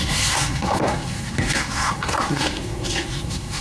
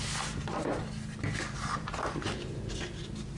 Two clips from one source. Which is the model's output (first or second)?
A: first